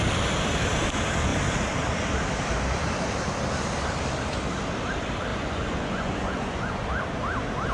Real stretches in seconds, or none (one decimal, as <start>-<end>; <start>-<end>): 0.0-5.3; 6.8-7.7